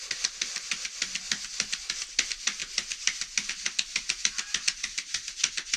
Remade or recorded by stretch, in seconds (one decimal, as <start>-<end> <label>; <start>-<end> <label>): 0.0-5.8 recorded